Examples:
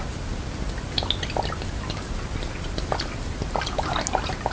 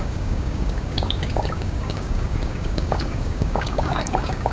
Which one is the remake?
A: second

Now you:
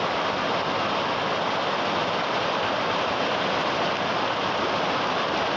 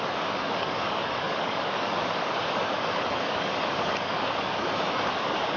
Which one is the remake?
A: second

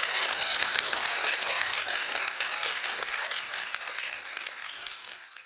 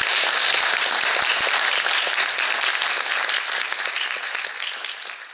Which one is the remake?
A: first